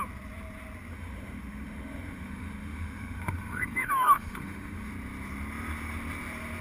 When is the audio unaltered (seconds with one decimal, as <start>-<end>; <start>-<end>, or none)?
0.0-0.9; 4.9-6.6